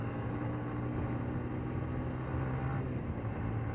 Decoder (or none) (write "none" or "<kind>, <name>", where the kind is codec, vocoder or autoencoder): vocoder, BigVGAN v2